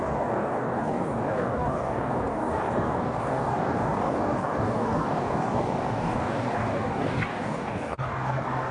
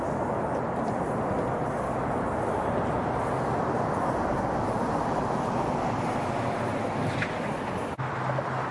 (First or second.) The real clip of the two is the second